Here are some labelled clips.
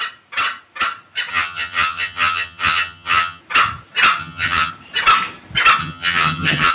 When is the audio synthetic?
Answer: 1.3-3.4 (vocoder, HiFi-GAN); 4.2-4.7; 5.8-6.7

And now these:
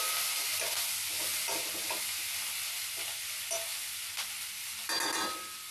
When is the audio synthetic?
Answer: none

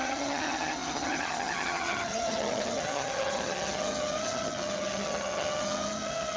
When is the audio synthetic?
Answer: 0.0-6.4 (vocoder, HiFi-GAN)